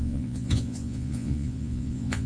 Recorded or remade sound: remade